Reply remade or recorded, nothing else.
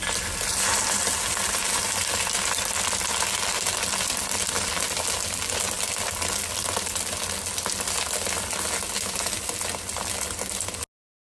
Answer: recorded